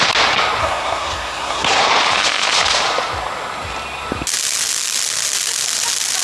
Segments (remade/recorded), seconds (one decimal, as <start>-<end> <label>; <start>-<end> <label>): 0.0-0.6 recorded; 0.6-1.8 remade; 1.8-6.2 recorded